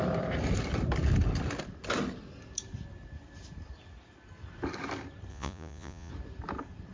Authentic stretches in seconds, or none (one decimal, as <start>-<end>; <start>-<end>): 0.0-5.3; 6.1-6.9